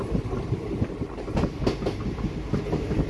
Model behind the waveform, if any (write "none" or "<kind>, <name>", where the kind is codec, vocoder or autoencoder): none